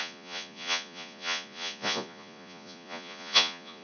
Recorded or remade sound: remade